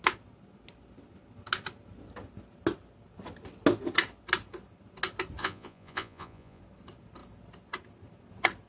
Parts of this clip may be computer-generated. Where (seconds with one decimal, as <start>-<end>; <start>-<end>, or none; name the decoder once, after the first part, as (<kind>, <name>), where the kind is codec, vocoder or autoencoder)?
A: 5.4-6.6 (vocoder, Vocos)